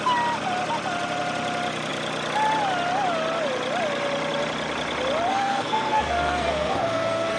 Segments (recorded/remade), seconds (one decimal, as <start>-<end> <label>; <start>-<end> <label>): 0.0-5.3 recorded; 5.3-7.4 remade